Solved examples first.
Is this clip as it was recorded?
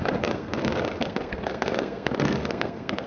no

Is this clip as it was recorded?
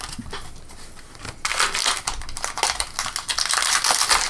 yes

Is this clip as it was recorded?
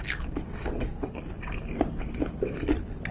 yes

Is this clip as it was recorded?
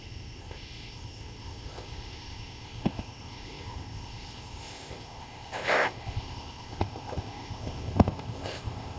no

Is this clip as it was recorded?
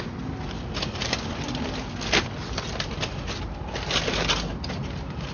yes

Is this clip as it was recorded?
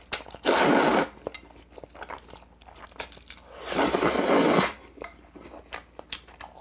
yes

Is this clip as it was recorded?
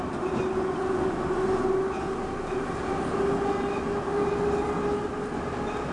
yes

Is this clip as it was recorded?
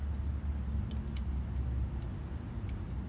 yes